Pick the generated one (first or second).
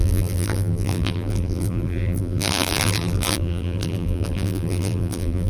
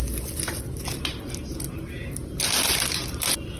first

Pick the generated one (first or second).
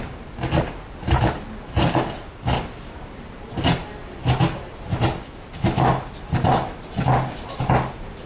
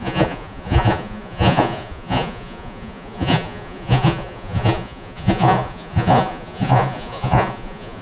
second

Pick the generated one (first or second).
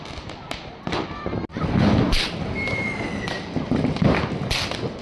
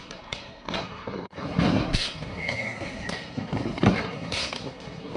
second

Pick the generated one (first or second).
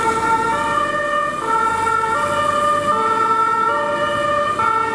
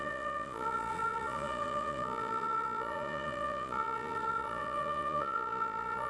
second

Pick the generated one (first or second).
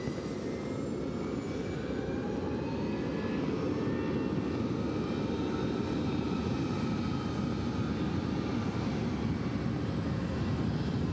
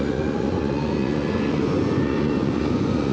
second